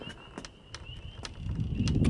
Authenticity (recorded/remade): recorded